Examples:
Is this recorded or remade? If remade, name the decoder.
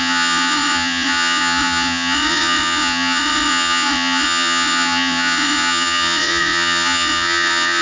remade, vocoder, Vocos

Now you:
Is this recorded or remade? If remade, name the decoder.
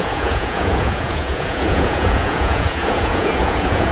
remade, vocoder, Vocos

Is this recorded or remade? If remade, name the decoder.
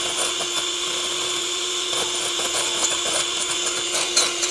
remade, vocoder, Vocos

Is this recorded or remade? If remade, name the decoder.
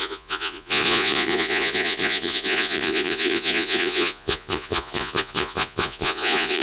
remade, vocoder, Vocos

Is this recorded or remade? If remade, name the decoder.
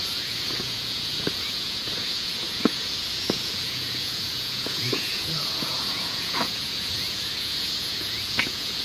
remade, vocoder, Vocos